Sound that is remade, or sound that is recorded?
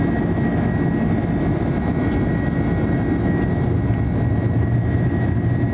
recorded